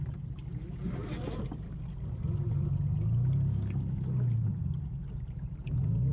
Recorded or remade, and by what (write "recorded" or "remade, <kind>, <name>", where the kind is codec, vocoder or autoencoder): recorded